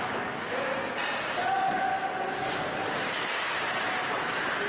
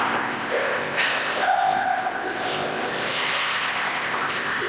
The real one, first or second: first